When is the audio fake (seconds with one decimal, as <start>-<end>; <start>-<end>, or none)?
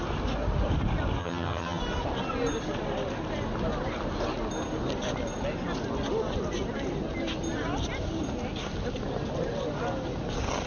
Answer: 1.2-1.8